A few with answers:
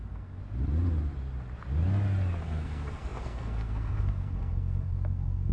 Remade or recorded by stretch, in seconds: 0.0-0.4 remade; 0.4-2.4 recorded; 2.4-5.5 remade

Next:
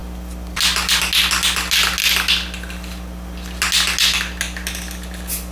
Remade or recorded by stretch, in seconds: 0.0-5.5 recorded

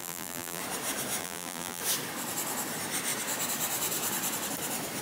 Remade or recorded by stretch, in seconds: 0.0-0.6 remade; 0.6-1.2 recorded; 1.2-1.8 remade; 1.8-5.0 recorded